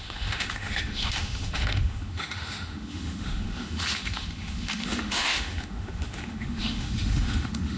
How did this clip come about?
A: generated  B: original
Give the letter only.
A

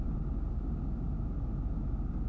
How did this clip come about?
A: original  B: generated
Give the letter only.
A